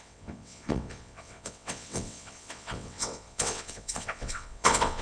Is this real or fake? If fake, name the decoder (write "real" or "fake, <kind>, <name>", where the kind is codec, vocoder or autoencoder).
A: fake, vocoder, WaveNeXt